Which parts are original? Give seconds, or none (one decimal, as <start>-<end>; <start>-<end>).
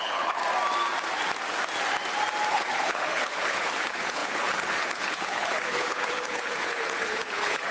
0.4-2.5